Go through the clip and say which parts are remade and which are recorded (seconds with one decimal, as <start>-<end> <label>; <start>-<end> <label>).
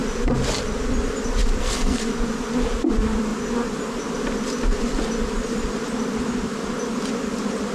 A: 0.0-1.6 recorded; 1.6-2.1 remade; 2.1-7.7 recorded